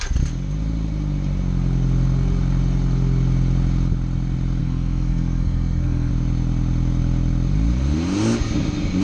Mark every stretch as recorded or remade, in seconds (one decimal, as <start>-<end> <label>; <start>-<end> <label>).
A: 0.0-4.6 recorded; 4.6-6.1 remade; 6.1-9.0 recorded